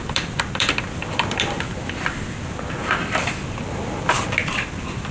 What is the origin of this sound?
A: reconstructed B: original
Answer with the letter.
A